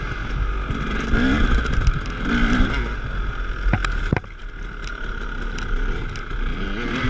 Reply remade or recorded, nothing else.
recorded